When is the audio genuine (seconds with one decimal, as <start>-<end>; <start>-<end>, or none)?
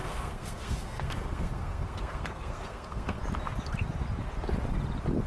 3.2-5.3